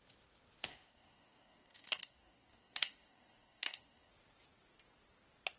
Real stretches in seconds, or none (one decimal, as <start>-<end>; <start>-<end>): 0.0-0.7; 4.1-5.6